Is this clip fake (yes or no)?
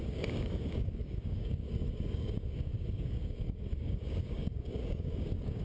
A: yes